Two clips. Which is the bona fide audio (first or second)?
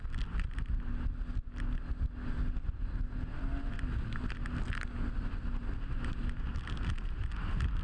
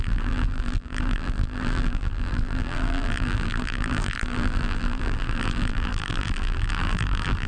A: first